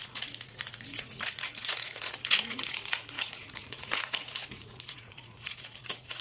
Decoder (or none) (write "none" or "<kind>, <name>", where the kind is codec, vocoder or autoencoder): vocoder, Vocos